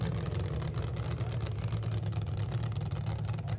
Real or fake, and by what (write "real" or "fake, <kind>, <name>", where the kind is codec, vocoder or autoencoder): real